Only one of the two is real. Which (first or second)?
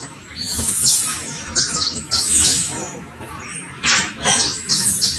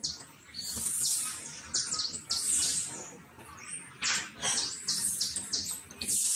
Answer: second